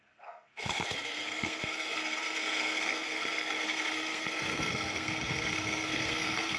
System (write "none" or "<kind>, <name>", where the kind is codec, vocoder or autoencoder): codec, SNAC